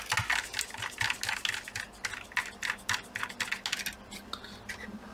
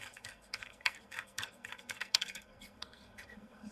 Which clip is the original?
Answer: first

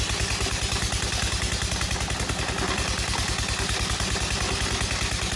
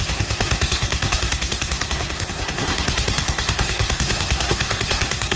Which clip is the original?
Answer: first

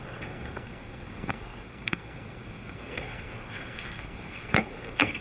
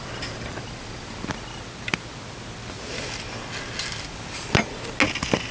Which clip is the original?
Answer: second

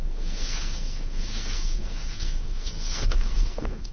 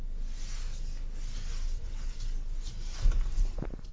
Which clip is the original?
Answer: second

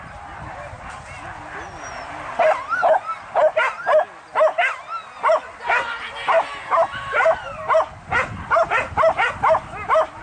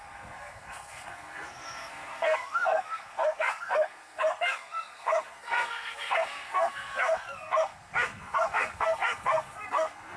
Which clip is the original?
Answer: first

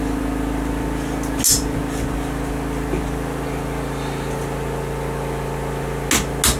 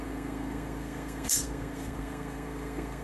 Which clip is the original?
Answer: first